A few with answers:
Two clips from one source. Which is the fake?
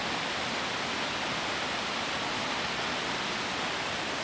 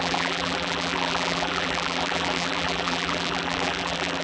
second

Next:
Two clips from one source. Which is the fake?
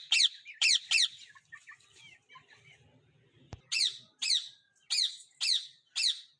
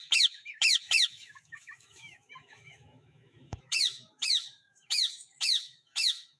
second